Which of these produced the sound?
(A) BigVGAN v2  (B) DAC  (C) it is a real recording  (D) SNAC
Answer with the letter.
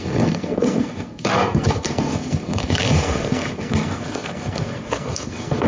D